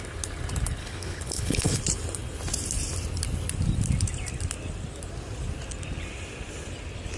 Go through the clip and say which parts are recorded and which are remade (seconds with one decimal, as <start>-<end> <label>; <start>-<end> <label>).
0.0-0.8 recorded; 0.8-1.8 remade; 1.8-7.2 recorded